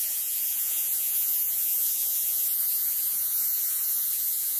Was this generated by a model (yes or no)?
yes